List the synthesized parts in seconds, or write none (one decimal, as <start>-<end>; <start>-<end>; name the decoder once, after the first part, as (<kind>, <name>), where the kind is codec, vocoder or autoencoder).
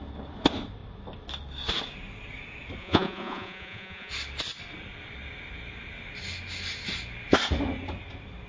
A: 2.8-4.1 (vocoder, Vocos)